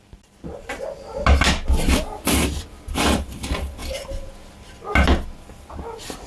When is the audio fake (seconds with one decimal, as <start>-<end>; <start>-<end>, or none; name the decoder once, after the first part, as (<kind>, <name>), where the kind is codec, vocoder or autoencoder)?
none